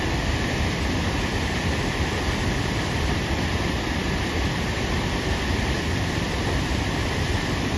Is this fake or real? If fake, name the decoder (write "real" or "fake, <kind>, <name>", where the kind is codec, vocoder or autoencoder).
fake, vocoder, BigVGAN v2